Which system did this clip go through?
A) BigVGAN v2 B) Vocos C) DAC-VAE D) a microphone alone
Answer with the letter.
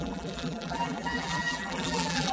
A